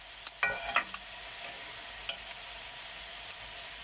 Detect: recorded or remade recorded